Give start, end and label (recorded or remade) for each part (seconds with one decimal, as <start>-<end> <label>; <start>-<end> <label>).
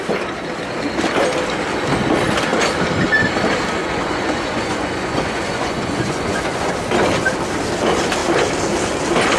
0.0-3.8 recorded; 3.8-6.7 remade; 6.7-9.4 recorded